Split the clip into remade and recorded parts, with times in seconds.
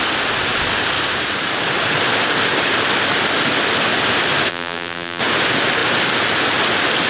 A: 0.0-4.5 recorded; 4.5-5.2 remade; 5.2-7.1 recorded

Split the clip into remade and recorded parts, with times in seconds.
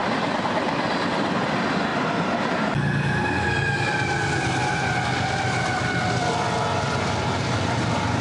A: 0.0-0.7 recorded; 0.7-1.9 remade; 1.9-6.1 recorded; 6.1-8.2 remade